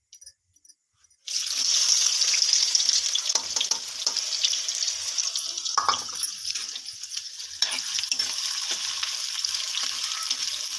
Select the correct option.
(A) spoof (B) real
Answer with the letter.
B